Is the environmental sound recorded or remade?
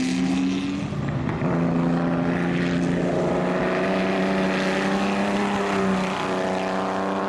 recorded